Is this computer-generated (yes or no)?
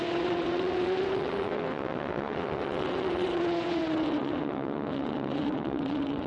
yes